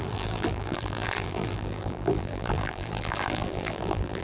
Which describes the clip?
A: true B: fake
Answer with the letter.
B